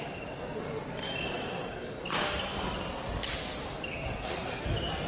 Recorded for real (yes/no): yes